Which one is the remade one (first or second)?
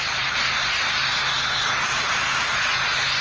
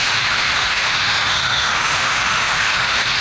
second